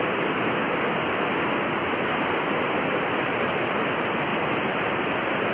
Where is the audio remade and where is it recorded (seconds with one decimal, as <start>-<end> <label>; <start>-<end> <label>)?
0.0-4.3 recorded; 4.3-4.9 remade; 4.9-5.5 recorded